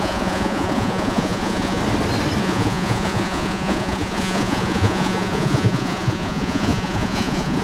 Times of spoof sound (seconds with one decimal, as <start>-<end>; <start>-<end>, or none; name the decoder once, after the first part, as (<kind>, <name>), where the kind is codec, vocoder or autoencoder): 0.0-1.8 (vocoder, Vocos); 2.4-7.6

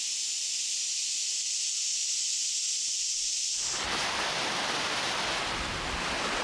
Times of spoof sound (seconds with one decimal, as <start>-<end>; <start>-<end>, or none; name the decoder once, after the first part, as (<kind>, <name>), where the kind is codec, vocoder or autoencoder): none

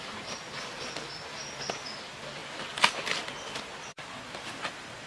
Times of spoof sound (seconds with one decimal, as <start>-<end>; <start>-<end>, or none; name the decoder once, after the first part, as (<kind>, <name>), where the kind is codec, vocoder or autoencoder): none

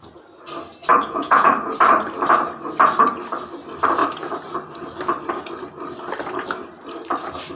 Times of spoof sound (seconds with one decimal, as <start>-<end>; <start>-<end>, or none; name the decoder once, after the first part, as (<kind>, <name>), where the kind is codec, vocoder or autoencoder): 0.9-1.5 (vocoder, Vocos)

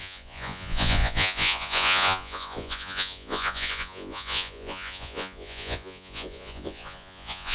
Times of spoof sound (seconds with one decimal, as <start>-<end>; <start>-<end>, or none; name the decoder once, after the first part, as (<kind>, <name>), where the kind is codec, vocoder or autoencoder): 0.0-7.5 (vocoder, Vocos)

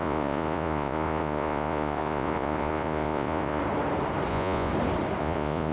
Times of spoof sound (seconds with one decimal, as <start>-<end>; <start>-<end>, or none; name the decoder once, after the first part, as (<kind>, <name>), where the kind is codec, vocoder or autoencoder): 0.0-3.6 (vocoder, Vocos); 4.3-4.7; 5.2-5.7

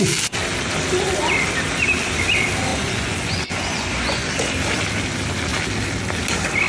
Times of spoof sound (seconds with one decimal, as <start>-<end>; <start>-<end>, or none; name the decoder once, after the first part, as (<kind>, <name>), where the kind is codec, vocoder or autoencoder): 2.7-4.3 (vocoder, Vocos)